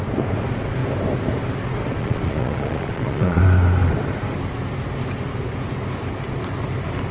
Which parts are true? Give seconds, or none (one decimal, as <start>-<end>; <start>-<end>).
0.0-2.0; 3.4-7.1